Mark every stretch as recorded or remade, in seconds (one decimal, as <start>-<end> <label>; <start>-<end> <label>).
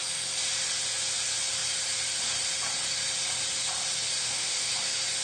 0.0-4.2 recorded; 4.2-4.7 remade; 4.7-5.2 recorded